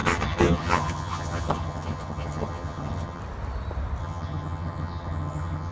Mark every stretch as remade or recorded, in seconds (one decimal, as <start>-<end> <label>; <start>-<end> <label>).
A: 0.0-3.2 remade; 3.2-4.0 recorded; 4.0-5.7 remade